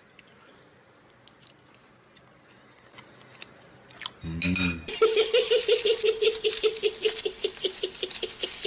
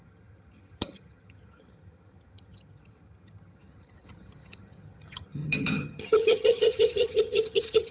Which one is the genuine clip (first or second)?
first